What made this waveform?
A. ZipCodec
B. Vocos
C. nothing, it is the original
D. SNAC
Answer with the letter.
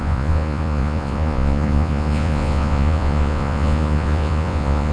B